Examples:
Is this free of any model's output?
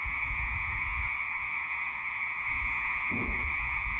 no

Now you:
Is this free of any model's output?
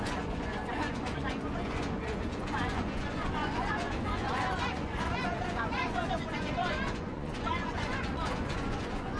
no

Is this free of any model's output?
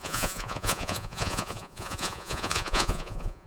no